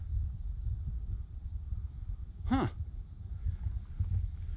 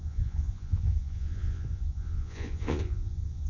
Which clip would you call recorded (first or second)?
first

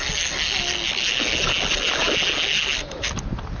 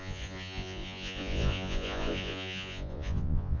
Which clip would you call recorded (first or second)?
first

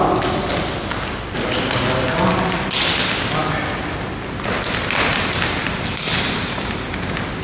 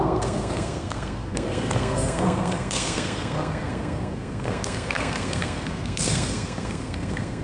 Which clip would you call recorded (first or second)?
first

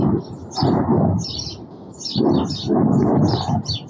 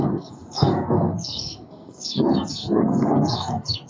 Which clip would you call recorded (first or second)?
first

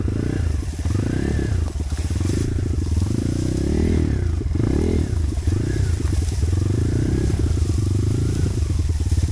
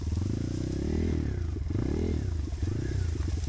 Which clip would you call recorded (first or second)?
second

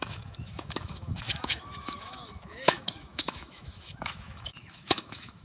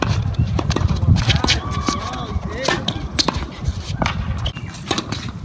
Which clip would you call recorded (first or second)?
second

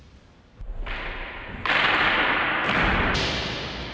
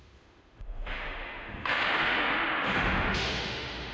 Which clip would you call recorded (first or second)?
first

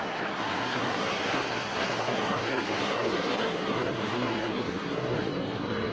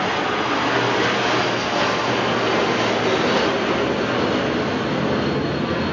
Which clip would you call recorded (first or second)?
second